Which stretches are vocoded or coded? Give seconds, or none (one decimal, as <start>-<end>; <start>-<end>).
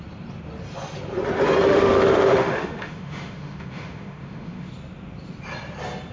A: 1.7-4.7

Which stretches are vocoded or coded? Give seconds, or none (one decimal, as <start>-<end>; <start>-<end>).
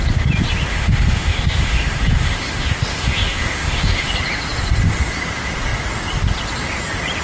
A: 0.7-4.1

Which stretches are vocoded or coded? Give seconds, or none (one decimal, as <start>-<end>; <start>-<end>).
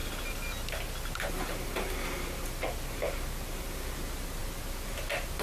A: none